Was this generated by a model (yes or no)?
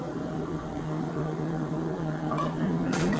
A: yes